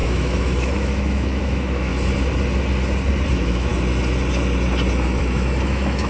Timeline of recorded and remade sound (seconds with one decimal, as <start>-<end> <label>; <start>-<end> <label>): 0.0-1.9 remade; 1.9-3.3 recorded; 3.3-3.7 remade; 3.7-5.2 recorded; 5.2-6.1 remade